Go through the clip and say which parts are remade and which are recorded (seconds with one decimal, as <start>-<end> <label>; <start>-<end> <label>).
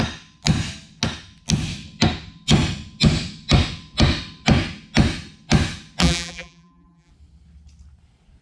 0.0-6.0 recorded; 6.0-7.1 remade; 7.1-8.4 recorded